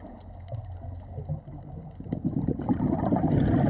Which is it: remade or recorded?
recorded